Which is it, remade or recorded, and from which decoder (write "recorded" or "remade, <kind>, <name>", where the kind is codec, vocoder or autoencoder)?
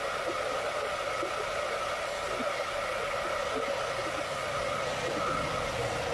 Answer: recorded